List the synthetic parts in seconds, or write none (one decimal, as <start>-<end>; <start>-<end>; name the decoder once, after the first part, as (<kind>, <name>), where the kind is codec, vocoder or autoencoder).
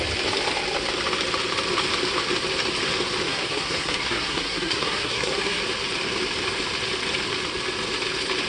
3.3-5.6 (codec, SNAC)